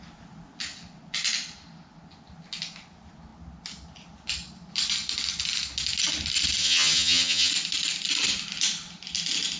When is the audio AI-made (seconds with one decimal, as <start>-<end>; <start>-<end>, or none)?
6.6-7.5